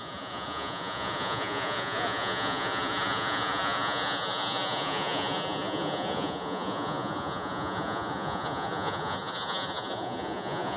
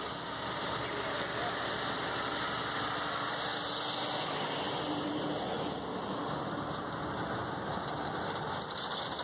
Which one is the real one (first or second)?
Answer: second